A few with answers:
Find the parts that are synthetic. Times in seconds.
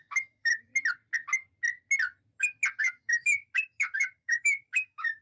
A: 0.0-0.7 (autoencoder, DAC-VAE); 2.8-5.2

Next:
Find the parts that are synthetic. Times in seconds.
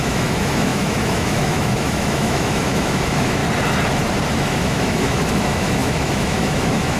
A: 0.0-3.4 (autoencoder, DAC-VAE); 4.3-7.0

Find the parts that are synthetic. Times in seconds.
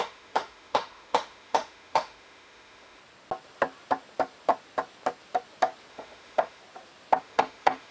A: 0.0-3.0 (autoencoder, DAC-VAE); 5.9-6.6; 7.2-7.9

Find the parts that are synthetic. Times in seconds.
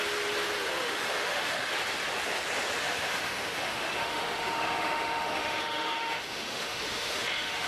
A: 0.8-1.7 (autoencoder, DAC-VAE); 2.8-7.7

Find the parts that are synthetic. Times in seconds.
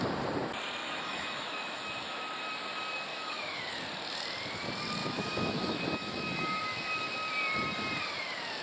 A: 0.8-2.2 (autoencoder, DAC-VAE); 3.1-3.6; 5.0-6.6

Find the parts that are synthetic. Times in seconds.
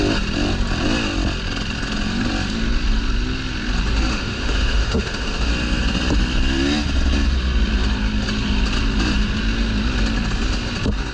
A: 4.1-5.5 (autoencoder, DAC-VAE)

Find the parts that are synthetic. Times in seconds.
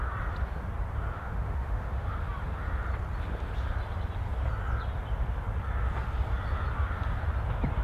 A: 1.1-2.1 (autoencoder, DAC-VAE)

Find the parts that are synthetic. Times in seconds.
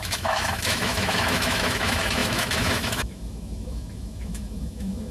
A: 0.0-5.1 (autoencoder, DAC-VAE)